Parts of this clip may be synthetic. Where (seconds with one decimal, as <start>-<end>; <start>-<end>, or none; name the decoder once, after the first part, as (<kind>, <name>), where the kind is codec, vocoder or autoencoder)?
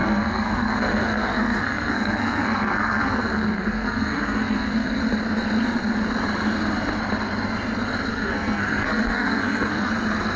0.0-5.0 (codec, SNAC); 8.1-9.9